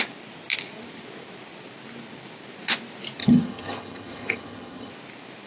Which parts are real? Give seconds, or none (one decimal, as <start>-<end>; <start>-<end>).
0.0-3.2; 4.9-5.5

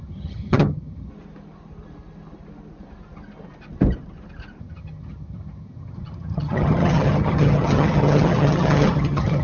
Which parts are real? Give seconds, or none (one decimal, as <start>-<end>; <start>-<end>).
1.1-4.6

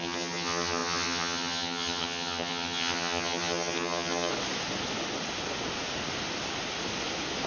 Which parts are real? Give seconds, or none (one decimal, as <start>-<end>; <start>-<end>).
4.3-7.5

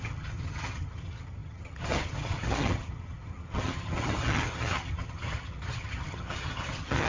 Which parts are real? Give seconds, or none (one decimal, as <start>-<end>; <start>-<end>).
none

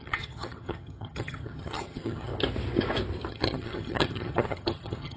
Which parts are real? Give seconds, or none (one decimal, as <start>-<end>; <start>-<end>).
2.3-3.3

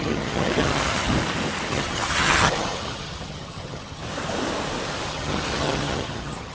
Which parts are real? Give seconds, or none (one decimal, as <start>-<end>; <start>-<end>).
1.1-1.7; 4.0-5.1